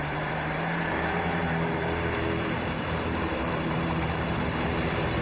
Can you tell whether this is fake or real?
fake